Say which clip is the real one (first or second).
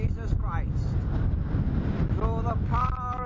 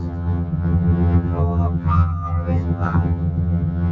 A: first